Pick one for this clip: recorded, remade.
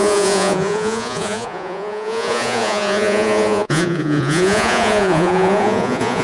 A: remade